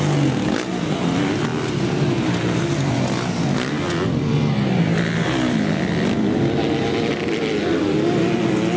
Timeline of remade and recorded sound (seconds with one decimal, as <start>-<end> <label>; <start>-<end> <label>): 0.0-8.8 recorded